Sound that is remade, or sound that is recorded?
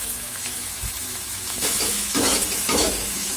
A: remade